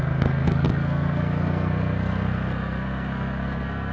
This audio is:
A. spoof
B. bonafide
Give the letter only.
A